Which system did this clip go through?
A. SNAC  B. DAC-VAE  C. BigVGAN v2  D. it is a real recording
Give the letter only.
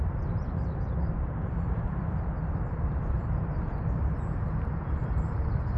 C